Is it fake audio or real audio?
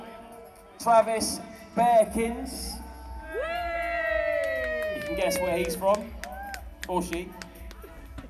real